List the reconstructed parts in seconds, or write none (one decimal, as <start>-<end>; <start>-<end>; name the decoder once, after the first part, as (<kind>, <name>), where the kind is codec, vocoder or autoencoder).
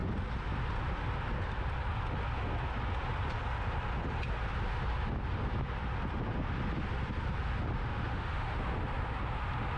7.8-8.6 (autoencoder, DAC-VAE)